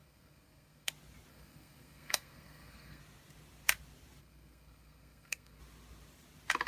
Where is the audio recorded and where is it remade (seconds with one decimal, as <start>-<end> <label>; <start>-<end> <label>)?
0.0-0.9 remade; 0.9-1.3 recorded; 1.3-3.0 remade; 3.0-4.2 recorded; 4.2-5.6 remade; 5.6-6.7 recorded

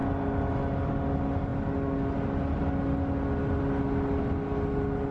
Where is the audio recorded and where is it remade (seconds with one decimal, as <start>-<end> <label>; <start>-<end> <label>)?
0.0-5.1 recorded

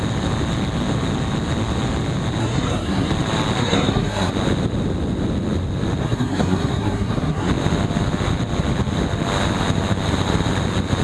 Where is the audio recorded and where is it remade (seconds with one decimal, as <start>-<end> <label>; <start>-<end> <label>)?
0.0-2.4 recorded; 2.4-3.1 remade; 3.1-3.6 recorded; 3.6-4.3 remade; 4.3-6.0 recorded; 6.0-7.5 remade; 7.5-11.0 recorded